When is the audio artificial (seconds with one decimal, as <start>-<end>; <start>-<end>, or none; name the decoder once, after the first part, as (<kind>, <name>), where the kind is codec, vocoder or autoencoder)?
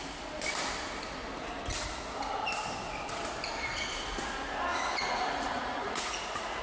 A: 4.7-6.6 (vocoder, Vocos)